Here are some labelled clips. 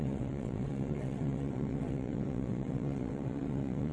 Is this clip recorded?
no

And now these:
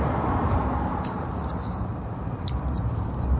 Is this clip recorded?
no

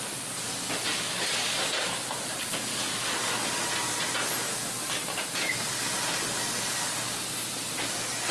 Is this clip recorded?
yes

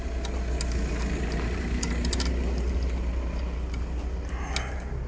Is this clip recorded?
yes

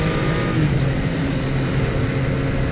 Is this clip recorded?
yes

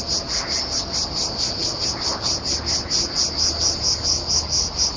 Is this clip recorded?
yes